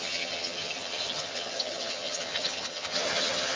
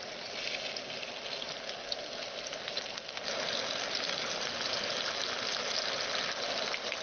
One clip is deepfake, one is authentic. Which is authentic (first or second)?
second